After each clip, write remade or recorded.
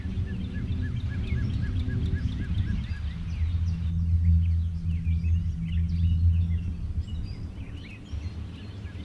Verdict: recorded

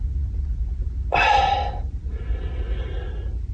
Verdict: recorded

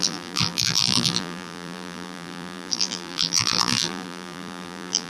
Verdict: remade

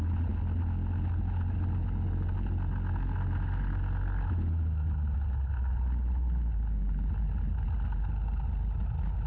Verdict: recorded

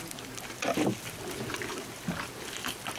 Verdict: recorded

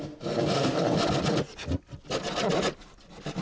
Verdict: recorded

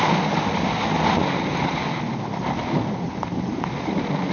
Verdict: recorded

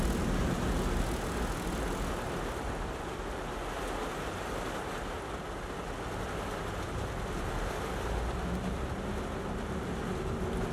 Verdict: recorded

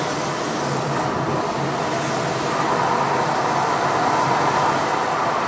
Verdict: recorded